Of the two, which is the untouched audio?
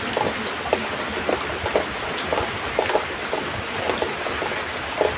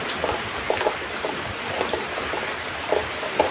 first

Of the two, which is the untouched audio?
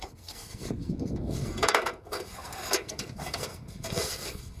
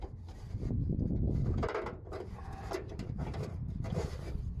second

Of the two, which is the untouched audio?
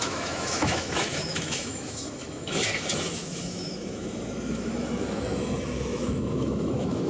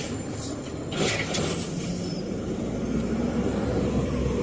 second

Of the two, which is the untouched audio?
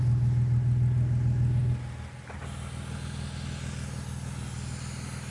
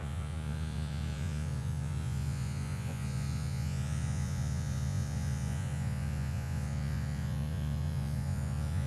first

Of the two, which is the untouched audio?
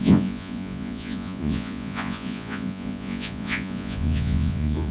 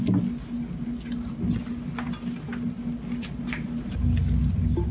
second